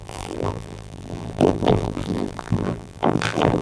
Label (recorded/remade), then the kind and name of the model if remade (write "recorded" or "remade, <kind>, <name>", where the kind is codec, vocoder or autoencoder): remade, vocoder, BigVGAN v2